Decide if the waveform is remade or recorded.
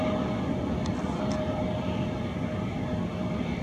recorded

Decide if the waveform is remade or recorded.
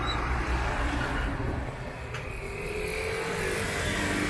recorded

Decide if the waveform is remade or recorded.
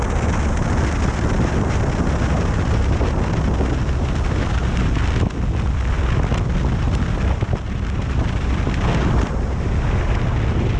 recorded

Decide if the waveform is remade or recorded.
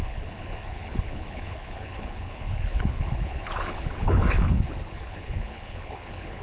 remade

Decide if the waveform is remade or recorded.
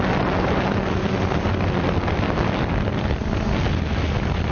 recorded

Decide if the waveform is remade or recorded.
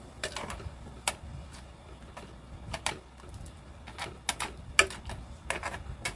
recorded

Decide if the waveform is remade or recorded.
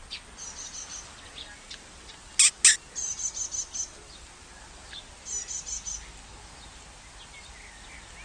recorded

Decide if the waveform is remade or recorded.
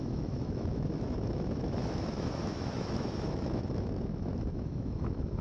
remade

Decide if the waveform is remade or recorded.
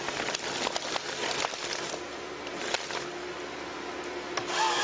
recorded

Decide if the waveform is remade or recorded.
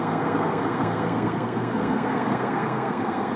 remade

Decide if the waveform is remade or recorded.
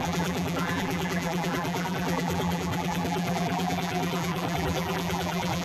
remade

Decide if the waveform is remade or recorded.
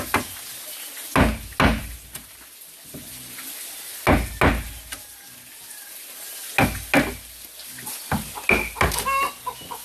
recorded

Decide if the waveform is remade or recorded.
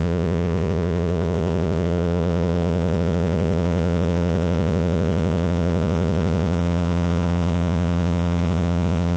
remade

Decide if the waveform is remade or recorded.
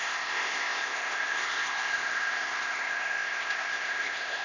remade